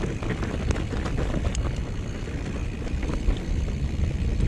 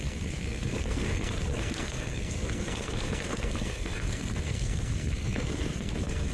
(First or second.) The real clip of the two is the first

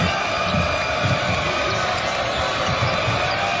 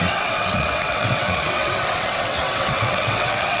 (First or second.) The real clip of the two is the first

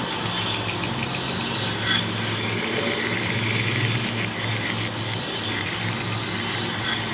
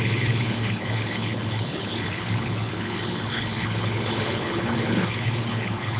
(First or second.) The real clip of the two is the first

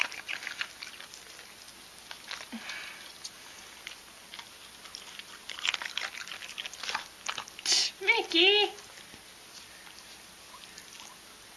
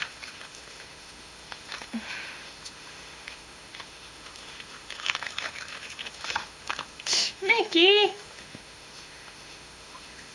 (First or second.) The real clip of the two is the first